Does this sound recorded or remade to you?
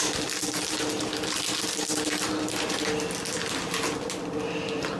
recorded